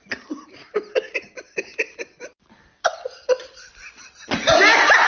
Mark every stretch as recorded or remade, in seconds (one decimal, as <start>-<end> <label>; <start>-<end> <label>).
0.0-0.9 recorded; 0.9-4.0 remade; 4.0-5.1 recorded